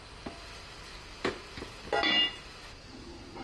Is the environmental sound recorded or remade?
recorded